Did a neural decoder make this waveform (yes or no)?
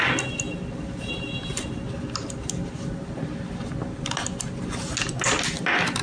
no